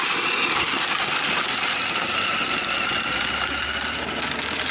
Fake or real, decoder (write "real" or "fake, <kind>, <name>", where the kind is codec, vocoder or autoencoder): real